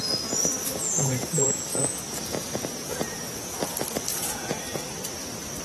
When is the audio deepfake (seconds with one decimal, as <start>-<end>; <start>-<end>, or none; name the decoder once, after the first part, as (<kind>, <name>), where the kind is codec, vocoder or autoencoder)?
1.0-3.6 (vocoder, Vocos); 4.1-4.6